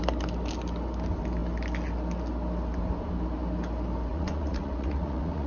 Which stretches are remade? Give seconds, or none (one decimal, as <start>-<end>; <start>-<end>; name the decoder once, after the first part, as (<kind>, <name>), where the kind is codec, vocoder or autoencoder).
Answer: 4.1-5.5 (vocoder, Vocos)